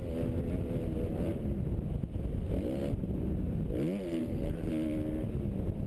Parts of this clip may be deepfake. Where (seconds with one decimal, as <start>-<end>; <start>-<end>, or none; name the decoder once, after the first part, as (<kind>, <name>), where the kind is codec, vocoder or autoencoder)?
4.2-4.7 (codec, SNAC)